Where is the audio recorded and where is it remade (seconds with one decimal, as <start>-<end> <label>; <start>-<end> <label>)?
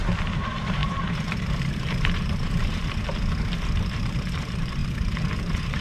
0.0-2.8 remade; 2.8-3.3 recorded; 3.3-5.8 remade